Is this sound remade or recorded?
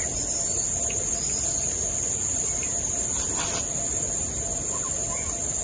recorded